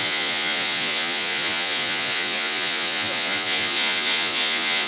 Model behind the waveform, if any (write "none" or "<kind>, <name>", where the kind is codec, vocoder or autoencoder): vocoder, Vocos